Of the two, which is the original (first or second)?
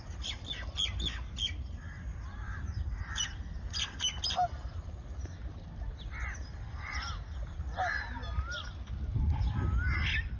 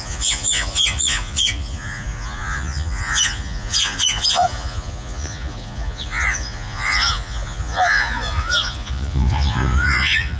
first